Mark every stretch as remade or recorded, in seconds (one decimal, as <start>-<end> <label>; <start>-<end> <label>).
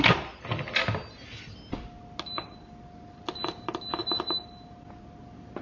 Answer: 0.0-5.6 recorded